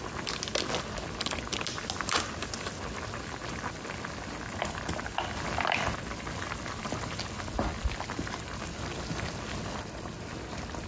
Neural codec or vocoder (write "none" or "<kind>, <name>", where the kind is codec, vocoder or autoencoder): none